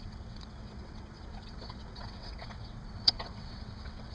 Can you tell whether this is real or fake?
fake